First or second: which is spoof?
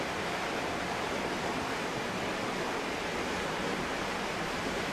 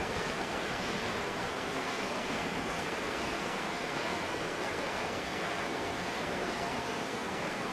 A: second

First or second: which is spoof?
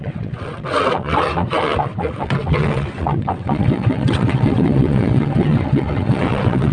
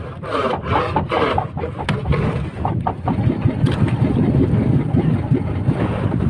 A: first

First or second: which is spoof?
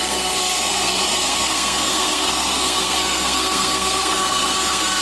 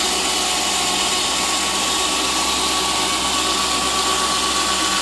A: first